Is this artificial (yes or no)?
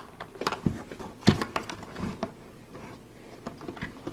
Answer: no